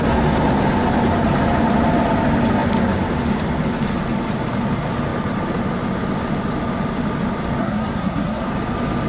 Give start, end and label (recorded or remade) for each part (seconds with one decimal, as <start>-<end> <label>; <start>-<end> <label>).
0.0-7.6 recorded; 7.6-8.5 remade; 8.5-9.1 recorded